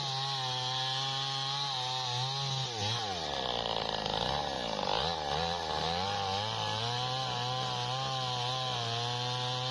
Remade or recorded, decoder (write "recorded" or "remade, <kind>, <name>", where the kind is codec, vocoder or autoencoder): recorded